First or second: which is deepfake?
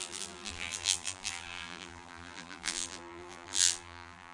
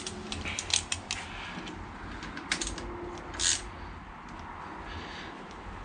first